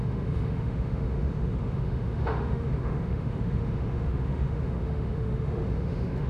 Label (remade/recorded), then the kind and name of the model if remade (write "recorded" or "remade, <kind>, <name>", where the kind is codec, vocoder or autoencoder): remade, autoencoder, DAC-VAE